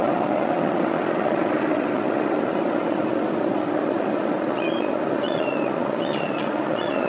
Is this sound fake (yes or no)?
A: yes